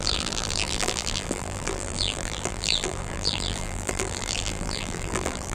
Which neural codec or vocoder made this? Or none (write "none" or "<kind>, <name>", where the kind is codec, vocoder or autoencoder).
vocoder, BigVGAN v2